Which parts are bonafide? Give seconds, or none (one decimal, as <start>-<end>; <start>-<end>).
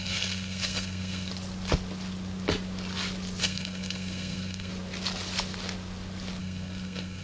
1.3-3.4; 4.7-6.4